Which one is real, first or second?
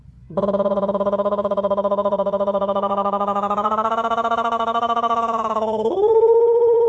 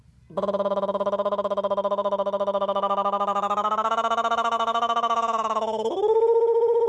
second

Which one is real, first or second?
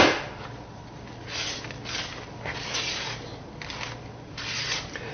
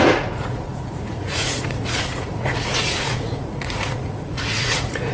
first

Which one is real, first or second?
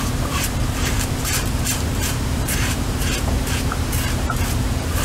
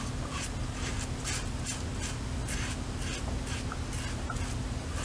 second